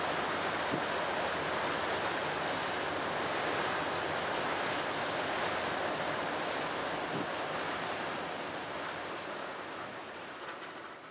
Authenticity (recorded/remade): recorded